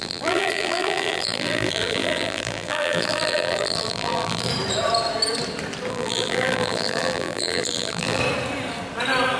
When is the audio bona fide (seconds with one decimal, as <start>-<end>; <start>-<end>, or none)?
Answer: 4.5-5.9; 8.2-9.4